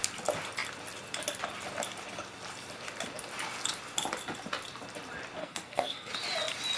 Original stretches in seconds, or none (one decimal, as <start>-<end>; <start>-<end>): 0.0-5.4; 6.1-6.8